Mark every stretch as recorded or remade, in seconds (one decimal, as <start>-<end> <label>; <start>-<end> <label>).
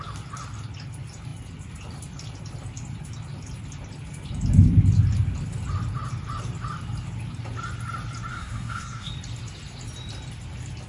0.0-8.3 recorded; 8.3-9.1 remade; 9.1-10.9 recorded